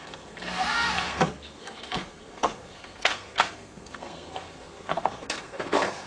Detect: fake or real fake